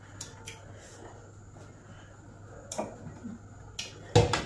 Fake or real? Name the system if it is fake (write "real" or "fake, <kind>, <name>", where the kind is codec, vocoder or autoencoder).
real